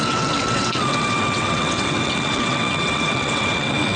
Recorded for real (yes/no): no